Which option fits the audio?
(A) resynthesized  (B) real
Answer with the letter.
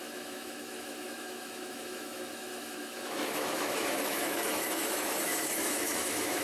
A